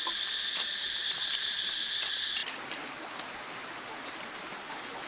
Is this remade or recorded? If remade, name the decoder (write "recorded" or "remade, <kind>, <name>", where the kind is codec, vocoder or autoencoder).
recorded